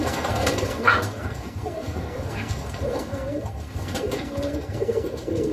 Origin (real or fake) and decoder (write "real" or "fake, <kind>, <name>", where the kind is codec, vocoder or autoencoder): fake, codec, SNAC